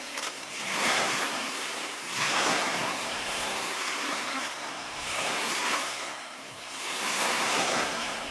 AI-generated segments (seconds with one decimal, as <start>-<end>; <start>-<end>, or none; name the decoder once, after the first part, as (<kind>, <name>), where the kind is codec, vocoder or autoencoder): 0.0-8.3 (codec, SNAC)